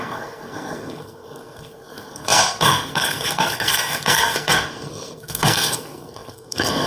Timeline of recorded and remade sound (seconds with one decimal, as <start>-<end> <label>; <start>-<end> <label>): 0.0-6.9 remade

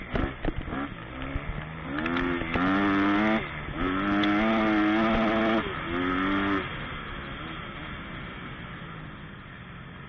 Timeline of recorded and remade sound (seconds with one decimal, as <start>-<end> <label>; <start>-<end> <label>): 0.0-10.1 recorded